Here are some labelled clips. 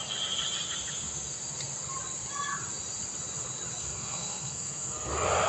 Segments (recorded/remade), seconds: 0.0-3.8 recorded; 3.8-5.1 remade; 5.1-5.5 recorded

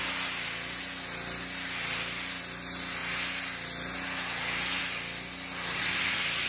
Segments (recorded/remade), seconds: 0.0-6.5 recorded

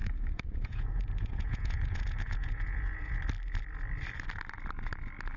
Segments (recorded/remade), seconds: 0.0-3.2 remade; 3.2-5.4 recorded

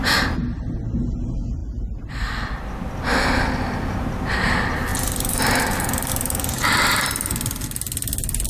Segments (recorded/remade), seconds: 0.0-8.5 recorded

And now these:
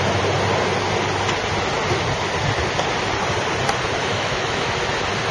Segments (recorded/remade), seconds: 0.0-4.0 recorded; 4.0-4.7 remade; 4.7-5.3 recorded

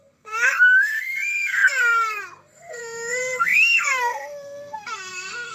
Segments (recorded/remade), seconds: 0.0-5.5 remade